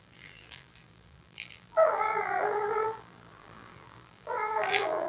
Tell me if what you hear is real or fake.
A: fake